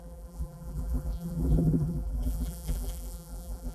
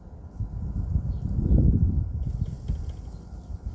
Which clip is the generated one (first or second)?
first